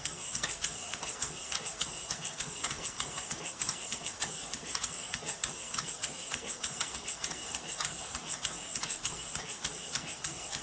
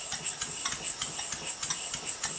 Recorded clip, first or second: second